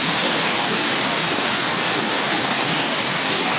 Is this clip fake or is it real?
fake